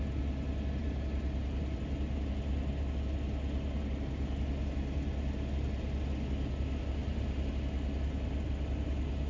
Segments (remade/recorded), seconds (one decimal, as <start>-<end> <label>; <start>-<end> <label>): 0.0-0.8 recorded; 0.8-1.8 remade; 1.8-7.0 recorded; 7.0-7.5 remade; 7.5-9.3 recorded

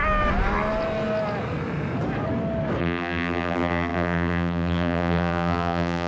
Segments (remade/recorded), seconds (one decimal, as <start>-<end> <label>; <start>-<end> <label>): 0.0-2.8 recorded; 2.8-6.1 remade

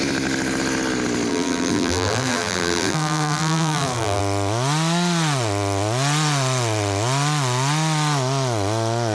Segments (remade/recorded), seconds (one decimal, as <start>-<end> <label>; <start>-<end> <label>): 0.0-1.3 recorded; 1.3-4.2 remade; 4.2-9.1 recorded

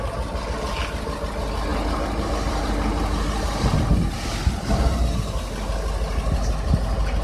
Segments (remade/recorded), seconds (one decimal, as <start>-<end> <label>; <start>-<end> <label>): 0.0-7.2 recorded

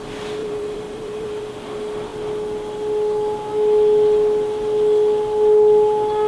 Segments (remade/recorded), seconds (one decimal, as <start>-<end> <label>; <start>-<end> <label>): 0.0-0.4 recorded; 0.4-1.4 remade; 1.4-6.3 recorded